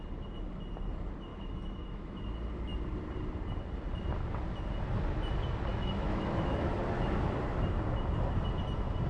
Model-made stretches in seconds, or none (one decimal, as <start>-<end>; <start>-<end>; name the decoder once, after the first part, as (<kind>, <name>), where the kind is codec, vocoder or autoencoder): 1.3-2.2 (autoencoder, DAC-VAE); 5.7-6.8